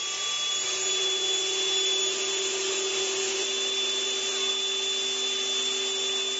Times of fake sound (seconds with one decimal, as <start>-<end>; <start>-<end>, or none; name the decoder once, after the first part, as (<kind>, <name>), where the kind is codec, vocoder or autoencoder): none